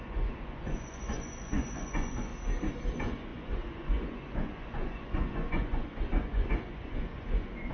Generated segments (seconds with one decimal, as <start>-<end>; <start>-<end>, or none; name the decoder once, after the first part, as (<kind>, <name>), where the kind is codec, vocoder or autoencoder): 0.0-2.3 (vocoder, Vocos); 2.9-7.7